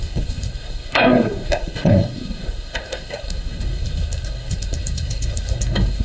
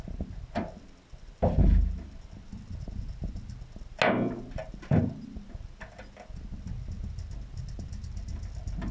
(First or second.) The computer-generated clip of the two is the first